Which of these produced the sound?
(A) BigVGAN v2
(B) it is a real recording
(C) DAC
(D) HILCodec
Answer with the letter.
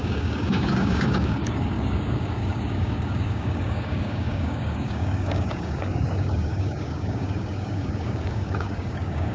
C